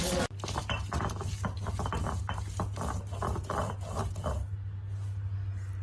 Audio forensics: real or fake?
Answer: real